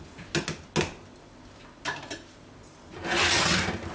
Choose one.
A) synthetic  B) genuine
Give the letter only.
B